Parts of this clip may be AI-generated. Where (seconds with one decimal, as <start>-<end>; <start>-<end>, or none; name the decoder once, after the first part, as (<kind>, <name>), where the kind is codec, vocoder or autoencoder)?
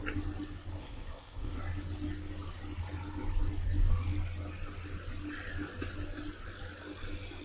0.8-1.6 (codec, ZipCodec)